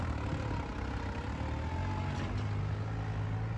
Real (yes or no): yes